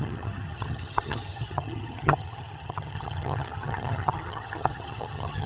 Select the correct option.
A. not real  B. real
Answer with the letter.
A